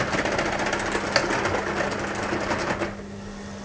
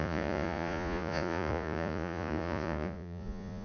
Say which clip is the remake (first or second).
second